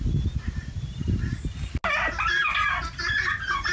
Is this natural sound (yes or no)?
yes